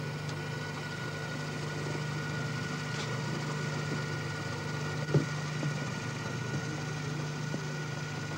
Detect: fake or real real